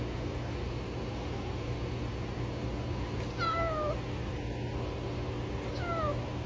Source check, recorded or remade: recorded